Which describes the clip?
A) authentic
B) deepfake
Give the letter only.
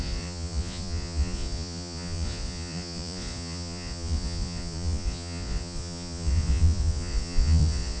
B